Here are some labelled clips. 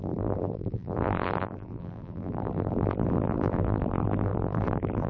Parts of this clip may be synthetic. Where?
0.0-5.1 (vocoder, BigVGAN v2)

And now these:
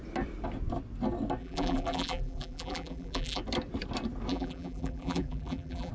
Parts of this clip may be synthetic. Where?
1.4-3.4 (vocoder, BigVGAN v2); 4.3-5.9